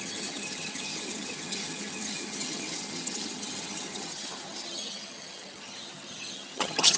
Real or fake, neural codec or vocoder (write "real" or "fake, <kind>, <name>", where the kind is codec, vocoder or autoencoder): fake, vocoder, HiFi-GAN